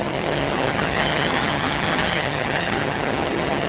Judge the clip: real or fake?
fake